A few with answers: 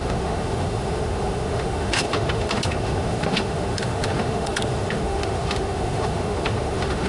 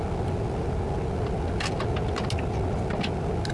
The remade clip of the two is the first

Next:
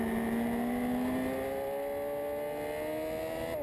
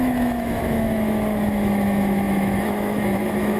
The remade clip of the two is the second